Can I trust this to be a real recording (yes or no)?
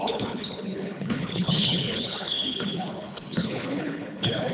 no